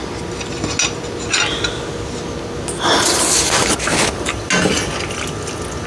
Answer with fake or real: real